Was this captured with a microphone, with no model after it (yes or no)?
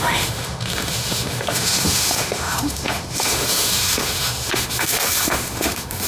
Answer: no